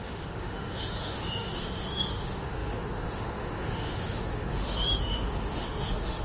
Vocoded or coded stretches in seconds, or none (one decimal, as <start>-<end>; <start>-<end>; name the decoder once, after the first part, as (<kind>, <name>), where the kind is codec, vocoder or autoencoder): 0.0-6.2 (autoencoder, DAC-VAE)

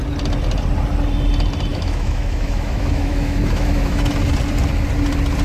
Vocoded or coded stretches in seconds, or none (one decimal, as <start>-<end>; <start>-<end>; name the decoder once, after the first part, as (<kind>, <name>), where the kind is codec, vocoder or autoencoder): 1.7-4.1 (autoencoder, DAC-VAE)

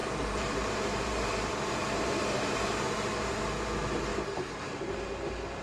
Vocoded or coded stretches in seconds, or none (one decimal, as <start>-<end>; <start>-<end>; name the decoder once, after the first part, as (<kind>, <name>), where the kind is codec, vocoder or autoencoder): 0.0-3.4 (vocoder, BigVGAN v2); 4.1-4.8

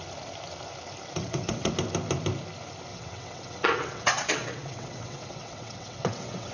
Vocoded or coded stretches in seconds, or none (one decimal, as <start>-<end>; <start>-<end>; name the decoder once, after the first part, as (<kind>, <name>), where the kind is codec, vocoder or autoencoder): 1.2-1.7 (vocoder, WaveNeXt); 2.9-6.5

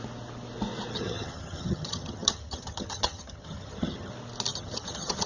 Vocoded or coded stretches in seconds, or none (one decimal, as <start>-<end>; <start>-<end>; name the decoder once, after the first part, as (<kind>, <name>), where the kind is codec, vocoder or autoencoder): 0.9-4.1 (vocoder, HiFi-GAN); 4.5-5.3

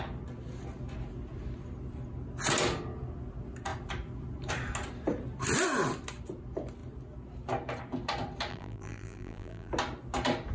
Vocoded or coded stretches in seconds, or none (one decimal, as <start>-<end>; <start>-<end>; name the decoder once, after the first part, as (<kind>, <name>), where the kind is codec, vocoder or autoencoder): 8.5-9.7 (vocoder, BigVGAN v2)